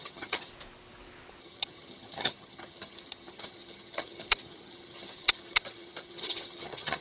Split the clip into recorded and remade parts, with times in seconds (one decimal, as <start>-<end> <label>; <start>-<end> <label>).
0.0-0.5 remade; 0.5-1.4 recorded; 1.4-7.0 remade